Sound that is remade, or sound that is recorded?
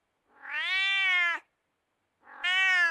recorded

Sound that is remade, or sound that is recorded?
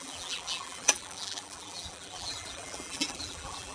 remade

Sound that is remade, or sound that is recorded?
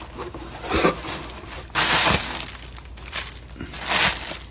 recorded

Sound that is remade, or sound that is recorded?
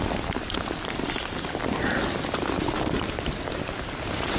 recorded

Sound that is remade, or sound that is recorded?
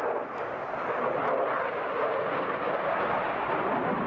recorded